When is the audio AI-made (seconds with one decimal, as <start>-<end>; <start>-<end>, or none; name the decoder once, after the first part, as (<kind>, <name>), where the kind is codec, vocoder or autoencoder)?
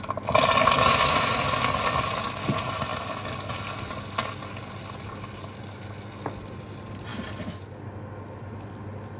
none